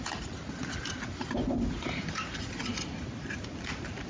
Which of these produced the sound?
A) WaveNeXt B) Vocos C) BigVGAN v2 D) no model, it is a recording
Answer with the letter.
D